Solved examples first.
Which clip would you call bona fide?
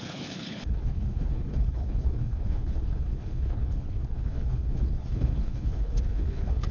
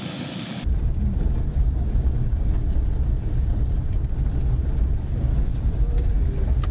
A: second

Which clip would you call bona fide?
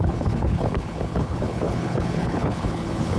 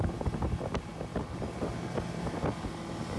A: second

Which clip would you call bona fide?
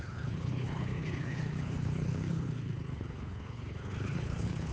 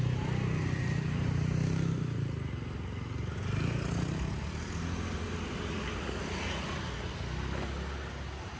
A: second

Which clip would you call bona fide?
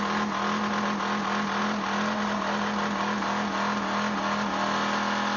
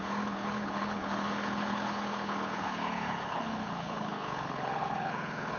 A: first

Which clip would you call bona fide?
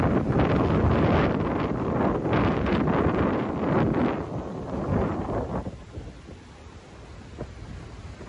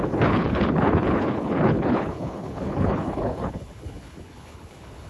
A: first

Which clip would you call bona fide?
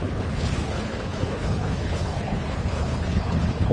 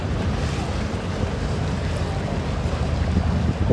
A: second